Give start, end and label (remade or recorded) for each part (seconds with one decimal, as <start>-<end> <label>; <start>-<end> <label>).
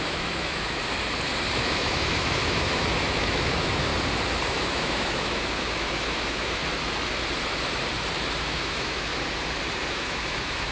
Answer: 0.0-0.8 remade; 0.8-1.6 recorded; 1.6-3.9 remade; 3.9-4.5 recorded; 4.5-6.6 remade; 6.6-8.4 recorded; 8.4-9.1 remade; 9.1-9.9 recorded; 9.9-10.7 remade